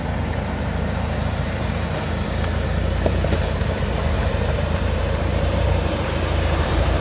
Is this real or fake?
fake